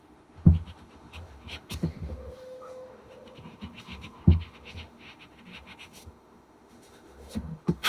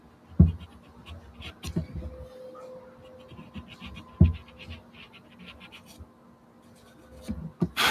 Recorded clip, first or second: second